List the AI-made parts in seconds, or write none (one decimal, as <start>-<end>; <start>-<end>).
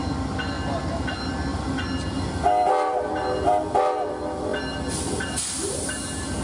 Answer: none